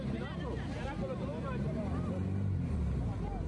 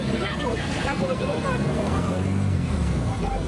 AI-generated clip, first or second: second